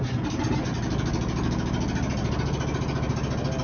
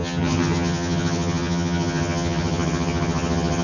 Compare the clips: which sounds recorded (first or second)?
first